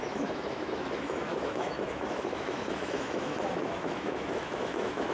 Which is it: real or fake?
fake